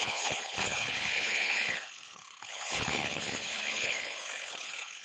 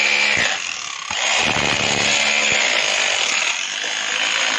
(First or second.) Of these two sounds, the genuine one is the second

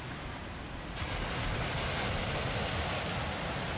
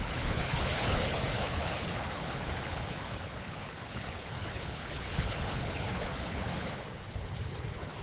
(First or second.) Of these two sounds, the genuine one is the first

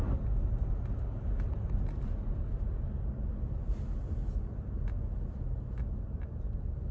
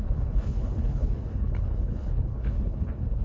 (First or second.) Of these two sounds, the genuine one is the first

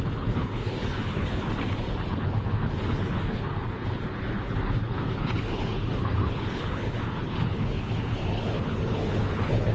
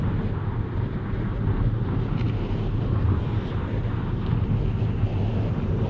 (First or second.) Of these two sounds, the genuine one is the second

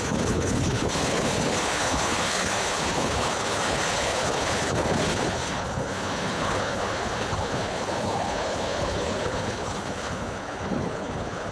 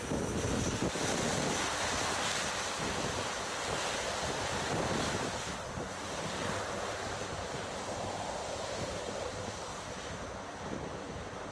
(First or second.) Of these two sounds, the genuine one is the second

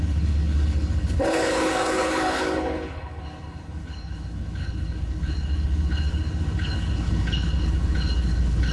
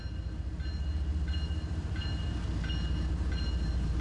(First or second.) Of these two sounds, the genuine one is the second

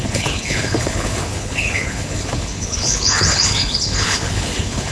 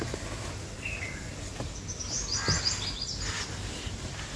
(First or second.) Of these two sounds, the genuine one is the second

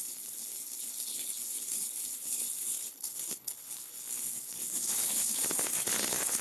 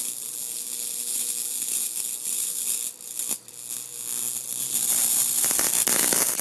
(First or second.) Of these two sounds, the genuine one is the second